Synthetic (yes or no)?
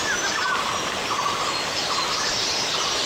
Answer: no